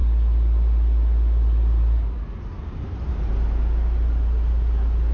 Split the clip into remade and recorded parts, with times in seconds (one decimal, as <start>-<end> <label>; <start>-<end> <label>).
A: 0.0-5.1 recorded